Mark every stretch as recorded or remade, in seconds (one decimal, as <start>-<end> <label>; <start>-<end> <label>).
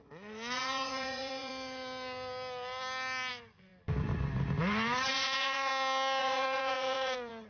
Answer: 0.0-1.5 remade; 1.5-3.3 recorded; 3.3-3.7 remade; 3.7-4.6 recorded; 4.6-5.7 remade; 5.7-6.2 recorded; 6.2-7.5 remade